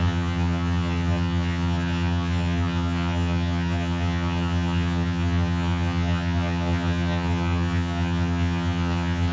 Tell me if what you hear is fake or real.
fake